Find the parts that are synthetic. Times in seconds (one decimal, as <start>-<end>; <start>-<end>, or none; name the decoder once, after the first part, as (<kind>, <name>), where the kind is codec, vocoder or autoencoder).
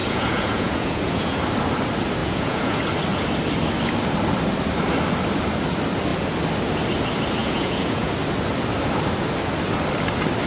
0.0-1.4 (vocoder, Vocos); 2.2-2.8; 7.4-8.1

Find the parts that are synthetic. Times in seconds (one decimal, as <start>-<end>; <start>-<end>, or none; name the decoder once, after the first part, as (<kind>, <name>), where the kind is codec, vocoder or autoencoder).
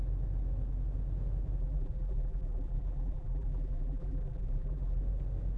1.6-5.0 (vocoder, BigVGAN v2)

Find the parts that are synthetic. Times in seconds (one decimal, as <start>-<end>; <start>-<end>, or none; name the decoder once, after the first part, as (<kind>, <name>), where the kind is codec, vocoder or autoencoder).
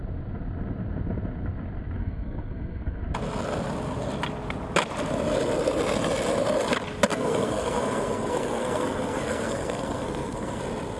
2.0-3.0 (codec, SNAC); 7.1-10.6